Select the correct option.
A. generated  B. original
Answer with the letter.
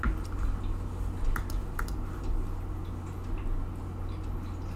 B